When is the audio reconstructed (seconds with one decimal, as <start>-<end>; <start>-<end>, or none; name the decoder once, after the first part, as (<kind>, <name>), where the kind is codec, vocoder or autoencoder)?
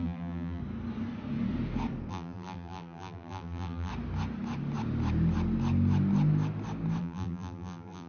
0.0-0.6 (vocoder, BigVGAN v2); 2.1-3.9; 7.0-8.1